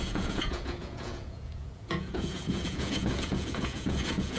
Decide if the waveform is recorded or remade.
remade